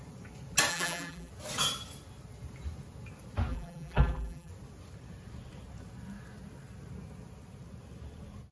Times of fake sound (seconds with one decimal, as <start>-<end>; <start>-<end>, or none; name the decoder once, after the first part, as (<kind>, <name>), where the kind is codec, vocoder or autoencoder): 0.7-1.3 (vocoder, BigVGAN v2); 3.5-4.5